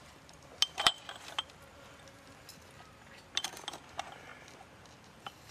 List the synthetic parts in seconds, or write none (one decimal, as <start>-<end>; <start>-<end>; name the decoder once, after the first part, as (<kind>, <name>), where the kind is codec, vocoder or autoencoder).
0.0-0.5 (vocoder, BigVGAN v2); 3.8-5.5